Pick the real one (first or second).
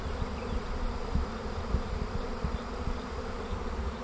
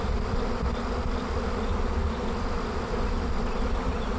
second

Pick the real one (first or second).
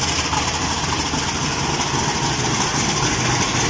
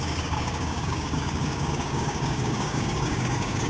first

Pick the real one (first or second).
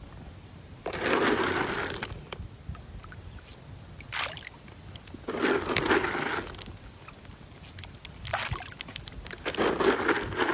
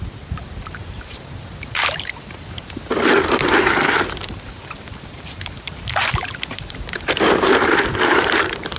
first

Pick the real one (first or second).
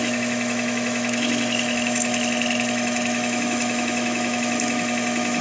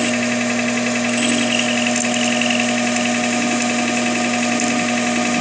second